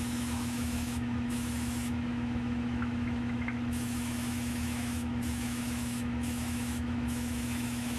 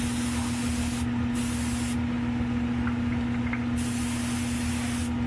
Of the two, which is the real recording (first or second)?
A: second